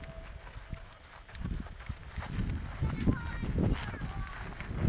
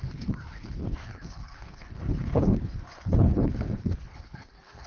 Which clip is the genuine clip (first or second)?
first